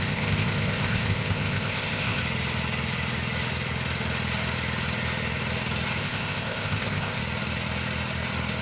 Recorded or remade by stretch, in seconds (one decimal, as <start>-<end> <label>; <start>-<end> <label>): 0.0-2.2 remade; 2.2-6.0 recorded; 6.0-7.2 remade; 7.2-8.6 recorded